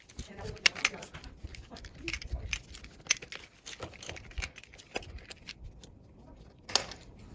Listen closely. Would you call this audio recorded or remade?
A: recorded